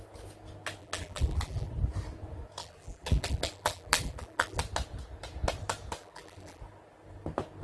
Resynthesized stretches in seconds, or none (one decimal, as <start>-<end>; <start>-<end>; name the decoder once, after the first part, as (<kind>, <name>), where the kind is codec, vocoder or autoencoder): 0.8-1.7 (vocoder, BigVGAN v2); 2.6-4.6; 6.0-6.6